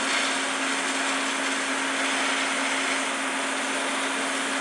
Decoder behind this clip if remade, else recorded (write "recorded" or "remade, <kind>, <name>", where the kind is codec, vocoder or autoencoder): recorded